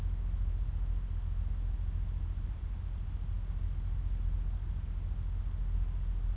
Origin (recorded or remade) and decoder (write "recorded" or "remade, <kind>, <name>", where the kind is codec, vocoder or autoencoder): recorded